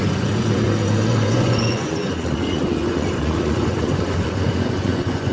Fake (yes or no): yes